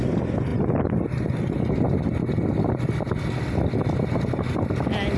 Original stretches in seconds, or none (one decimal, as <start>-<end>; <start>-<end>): 0.0-5.2